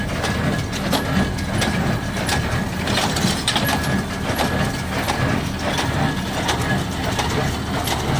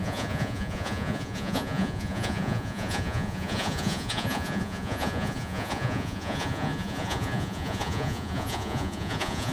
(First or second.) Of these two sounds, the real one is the first